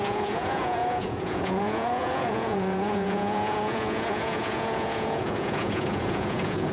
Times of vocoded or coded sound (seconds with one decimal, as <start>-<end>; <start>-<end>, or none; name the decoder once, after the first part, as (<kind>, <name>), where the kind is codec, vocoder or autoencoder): 0.0-6.7 (vocoder, Vocos)